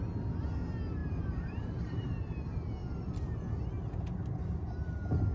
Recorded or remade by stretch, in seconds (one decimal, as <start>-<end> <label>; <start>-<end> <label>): 0.0-1.0 recorded; 1.0-2.1 remade; 2.1-5.3 recorded